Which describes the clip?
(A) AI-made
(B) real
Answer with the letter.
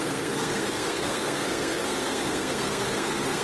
A